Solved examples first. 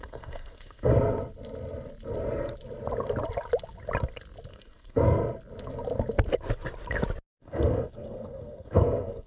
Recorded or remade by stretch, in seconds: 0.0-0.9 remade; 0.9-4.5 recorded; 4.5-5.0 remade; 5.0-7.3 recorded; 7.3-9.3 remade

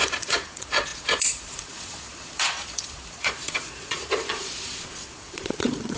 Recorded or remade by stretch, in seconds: 0.0-6.0 remade

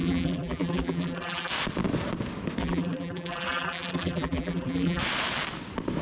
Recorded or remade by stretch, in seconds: 0.0-1.5 remade; 1.5-2.6 recorded; 2.6-5.0 remade; 5.0-6.0 recorded